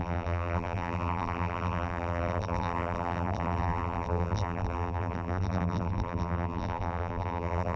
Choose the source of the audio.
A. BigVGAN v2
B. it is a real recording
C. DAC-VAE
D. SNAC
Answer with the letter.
A